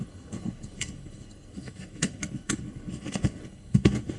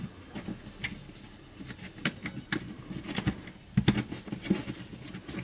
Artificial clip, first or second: first